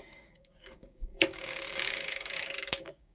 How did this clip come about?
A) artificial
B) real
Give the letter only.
A